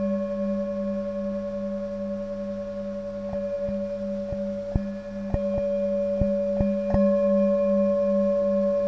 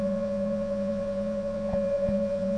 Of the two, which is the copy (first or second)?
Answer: second